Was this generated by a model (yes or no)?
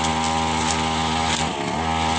no